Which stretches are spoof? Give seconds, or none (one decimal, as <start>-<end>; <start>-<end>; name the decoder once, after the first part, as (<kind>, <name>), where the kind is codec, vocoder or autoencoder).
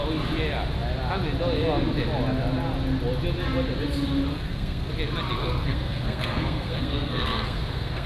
4.3-4.9 (codec, SNAC); 5.4-8.1